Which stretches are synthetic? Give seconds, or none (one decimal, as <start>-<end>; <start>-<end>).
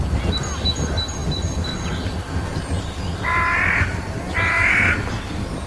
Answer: none